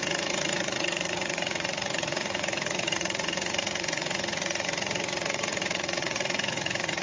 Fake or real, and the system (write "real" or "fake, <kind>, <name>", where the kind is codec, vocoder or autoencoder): fake, vocoder, Vocos